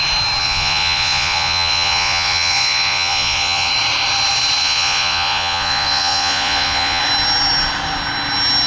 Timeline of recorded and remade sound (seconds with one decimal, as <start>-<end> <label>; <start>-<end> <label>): 0.0-0.4 recorded; 0.4-3.7 remade; 3.7-4.6 recorded; 4.6-7.0 remade; 7.0-8.7 recorded